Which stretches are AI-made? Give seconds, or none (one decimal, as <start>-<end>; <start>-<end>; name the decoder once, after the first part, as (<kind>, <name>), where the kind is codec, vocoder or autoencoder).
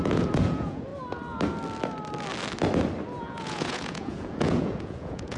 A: 0.0-0.9 (vocoder, Vocos); 3.2-5.4